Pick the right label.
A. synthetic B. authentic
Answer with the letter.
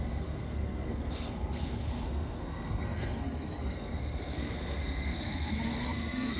A